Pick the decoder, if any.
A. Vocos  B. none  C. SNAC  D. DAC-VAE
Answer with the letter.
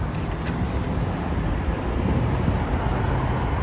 B